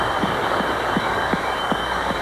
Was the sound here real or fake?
fake